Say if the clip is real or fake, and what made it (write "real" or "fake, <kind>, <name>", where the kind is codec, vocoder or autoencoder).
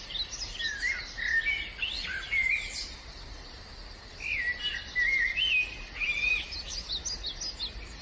real